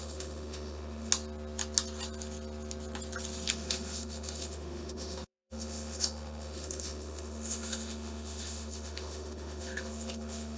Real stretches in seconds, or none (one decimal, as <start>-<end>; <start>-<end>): 1.1-3.5